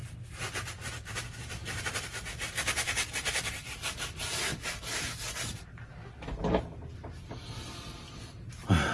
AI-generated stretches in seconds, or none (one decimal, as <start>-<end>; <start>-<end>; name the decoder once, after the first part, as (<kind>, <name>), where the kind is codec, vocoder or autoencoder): 0.0-4.5 (vocoder, BigVGAN v2); 8.3-8.9